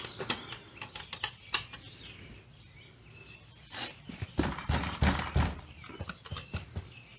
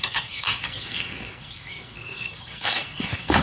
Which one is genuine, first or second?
first